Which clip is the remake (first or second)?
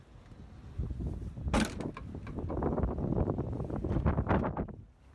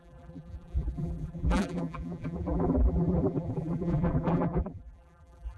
second